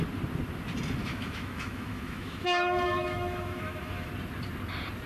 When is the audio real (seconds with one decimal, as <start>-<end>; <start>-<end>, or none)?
0.0-1.0; 4.1-5.1